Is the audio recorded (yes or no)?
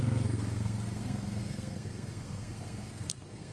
no